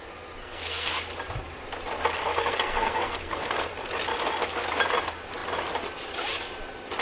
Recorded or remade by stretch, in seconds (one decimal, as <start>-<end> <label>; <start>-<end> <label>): 0.0-0.4 recorded; 0.4-0.9 remade; 0.9-2.2 recorded; 2.2-3.7 remade; 3.7-7.0 recorded